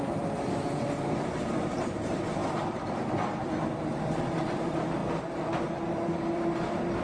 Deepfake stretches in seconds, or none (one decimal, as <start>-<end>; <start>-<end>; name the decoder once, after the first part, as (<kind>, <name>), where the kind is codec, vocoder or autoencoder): 0.0-5.0 (vocoder, BigVGAN v2); 5.9-7.0